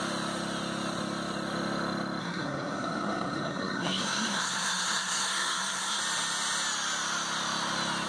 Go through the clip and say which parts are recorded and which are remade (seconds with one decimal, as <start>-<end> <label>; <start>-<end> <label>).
0.0-2.2 recorded; 2.2-6.0 remade; 6.0-8.1 recorded